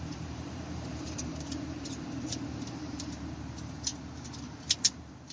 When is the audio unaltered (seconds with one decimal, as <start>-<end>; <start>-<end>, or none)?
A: 3.9-4.8